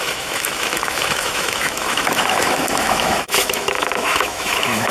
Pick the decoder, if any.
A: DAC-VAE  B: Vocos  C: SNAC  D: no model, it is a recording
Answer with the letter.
A